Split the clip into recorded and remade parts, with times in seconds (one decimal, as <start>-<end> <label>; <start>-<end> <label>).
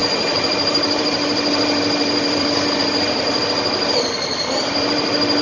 0.0-5.4 remade